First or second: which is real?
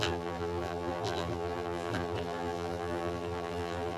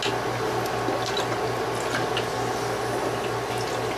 second